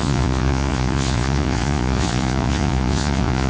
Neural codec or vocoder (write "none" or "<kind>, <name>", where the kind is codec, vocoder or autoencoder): vocoder, Vocos